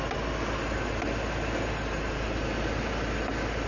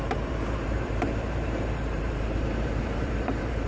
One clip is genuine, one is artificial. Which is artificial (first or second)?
second